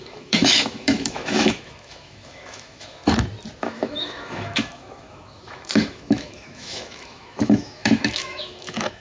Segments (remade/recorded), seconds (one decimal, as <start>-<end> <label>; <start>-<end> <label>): 0.0-3.0 remade; 3.0-3.6 recorded; 3.6-9.0 remade